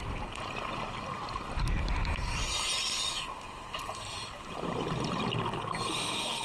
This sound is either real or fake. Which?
real